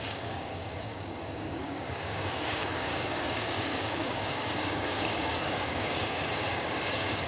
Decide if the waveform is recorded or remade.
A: remade